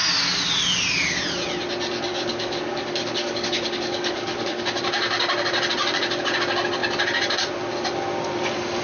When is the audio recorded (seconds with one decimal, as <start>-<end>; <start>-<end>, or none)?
0.0-2.1; 4.8-8.8

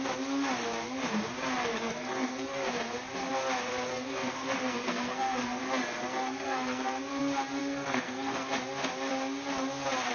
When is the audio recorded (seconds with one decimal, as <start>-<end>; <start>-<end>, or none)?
0.0-1.7; 2.7-3.9; 5.6-6.1; 7.1-7.6; 8.5-10.1

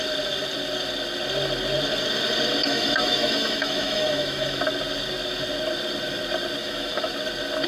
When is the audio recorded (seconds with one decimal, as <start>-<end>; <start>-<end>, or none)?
0.0-2.6; 4.6-6.6; 7.1-7.7

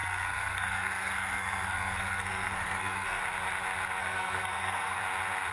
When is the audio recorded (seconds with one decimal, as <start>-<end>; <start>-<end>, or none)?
3.2-4.0; 5.0-5.5

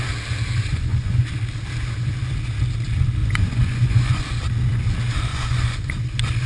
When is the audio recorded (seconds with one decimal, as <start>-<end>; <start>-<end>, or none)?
0.0-0.6; 1.3-3.2; 4.2-5.3; 5.9-6.5

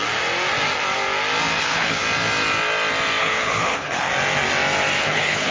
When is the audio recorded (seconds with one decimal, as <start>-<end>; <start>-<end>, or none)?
0.0-1.6; 2.0-3.2; 4.1-5.0

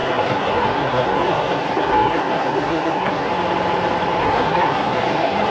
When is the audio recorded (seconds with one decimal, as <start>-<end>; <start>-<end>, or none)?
3.3-4.2

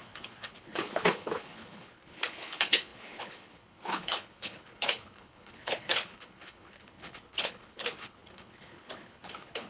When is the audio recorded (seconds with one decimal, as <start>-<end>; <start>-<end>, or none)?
none